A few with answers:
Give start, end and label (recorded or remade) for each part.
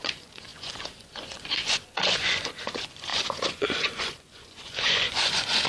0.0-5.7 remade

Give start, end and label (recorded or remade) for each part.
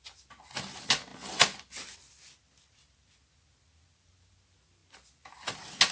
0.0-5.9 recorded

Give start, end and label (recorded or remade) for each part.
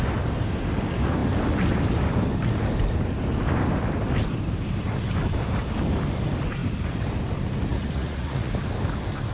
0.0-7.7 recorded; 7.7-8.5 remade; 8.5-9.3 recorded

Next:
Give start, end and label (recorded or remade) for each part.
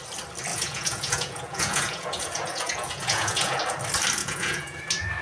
0.0-0.5 recorded; 0.5-3.6 remade; 3.6-4.2 recorded; 4.2-4.8 remade; 4.8-5.2 recorded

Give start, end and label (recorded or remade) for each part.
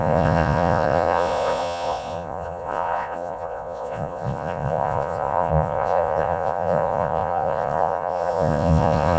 0.0-9.2 remade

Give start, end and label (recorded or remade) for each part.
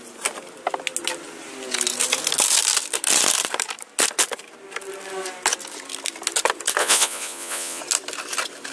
0.0-6.8 recorded; 6.8-7.8 remade; 7.8-8.7 recorded